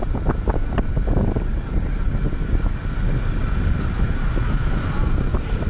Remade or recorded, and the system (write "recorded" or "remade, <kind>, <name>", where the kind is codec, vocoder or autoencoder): recorded